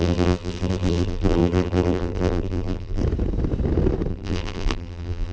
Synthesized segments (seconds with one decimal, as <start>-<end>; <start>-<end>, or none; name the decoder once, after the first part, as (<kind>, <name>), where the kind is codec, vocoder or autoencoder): 0.0-3.0 (vocoder, BigVGAN v2); 4.1-5.3

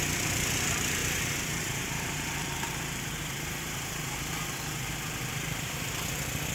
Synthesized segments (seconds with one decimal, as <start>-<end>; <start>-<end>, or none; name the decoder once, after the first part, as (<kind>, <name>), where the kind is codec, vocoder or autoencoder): 1.0-4.9 (vocoder, BigVGAN v2)

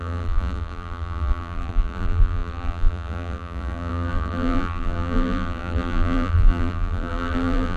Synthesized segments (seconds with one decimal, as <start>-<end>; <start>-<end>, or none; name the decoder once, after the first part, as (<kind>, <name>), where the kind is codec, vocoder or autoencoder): 0.0-7.8 (vocoder, BigVGAN v2)

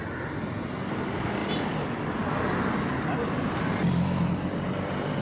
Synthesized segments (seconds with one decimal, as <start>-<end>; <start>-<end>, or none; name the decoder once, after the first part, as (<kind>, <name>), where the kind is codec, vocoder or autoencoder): none

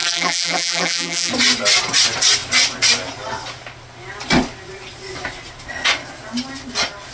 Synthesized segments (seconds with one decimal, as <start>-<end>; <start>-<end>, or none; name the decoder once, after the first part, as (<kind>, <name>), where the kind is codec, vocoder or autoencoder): 0.0-1.3 (vocoder, BigVGAN v2)